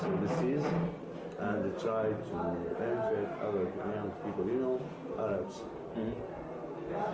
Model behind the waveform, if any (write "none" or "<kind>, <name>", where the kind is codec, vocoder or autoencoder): none